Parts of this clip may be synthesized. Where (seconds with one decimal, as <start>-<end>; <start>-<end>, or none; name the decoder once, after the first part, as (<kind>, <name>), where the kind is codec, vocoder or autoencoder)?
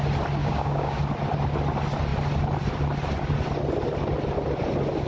0.4-1.0 (codec, DAC)